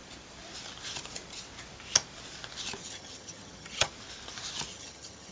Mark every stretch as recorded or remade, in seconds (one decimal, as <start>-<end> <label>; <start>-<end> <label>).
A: 0.0-2.8 recorded; 2.8-3.9 remade; 3.9-4.7 recorded; 4.7-5.3 remade